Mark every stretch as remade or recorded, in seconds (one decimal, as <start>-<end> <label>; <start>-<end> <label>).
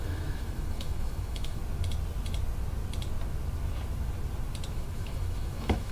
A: 0.0-1.6 remade; 1.6-4.7 recorded; 4.7-5.9 remade